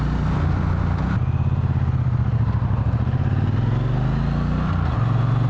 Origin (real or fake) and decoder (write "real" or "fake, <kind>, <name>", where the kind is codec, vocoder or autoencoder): real